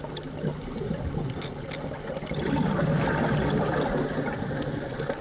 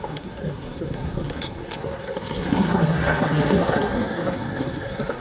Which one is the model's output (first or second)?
second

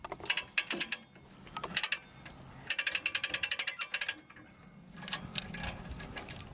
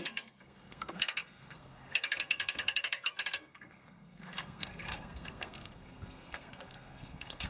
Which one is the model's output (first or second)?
second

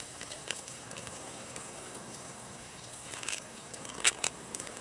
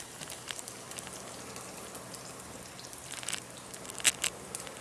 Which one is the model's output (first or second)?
first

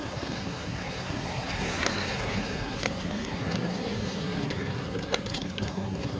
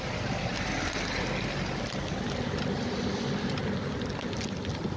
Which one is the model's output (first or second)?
first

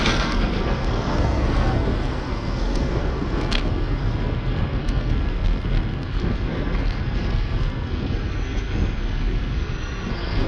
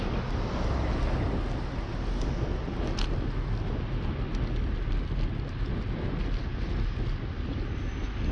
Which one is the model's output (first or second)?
first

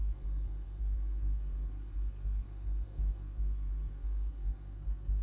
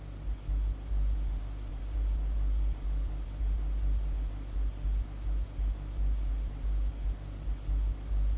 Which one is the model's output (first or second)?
first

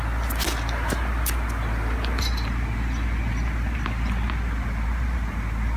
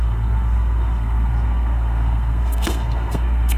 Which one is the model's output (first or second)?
second